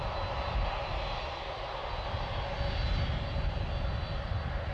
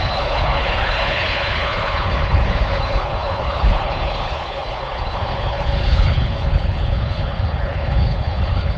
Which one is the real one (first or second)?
first